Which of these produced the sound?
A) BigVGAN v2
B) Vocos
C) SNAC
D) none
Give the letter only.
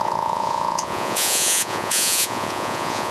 B